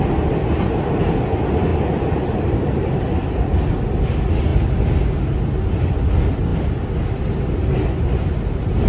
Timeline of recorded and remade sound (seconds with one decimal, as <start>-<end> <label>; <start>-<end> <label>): 0.0-1.7 recorded; 1.7-3.1 remade; 3.1-8.9 recorded